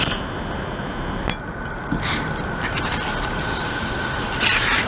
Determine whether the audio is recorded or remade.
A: recorded